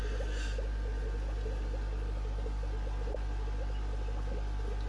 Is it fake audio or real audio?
real